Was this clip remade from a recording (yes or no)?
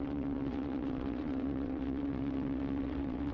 yes